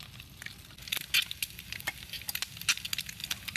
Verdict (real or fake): real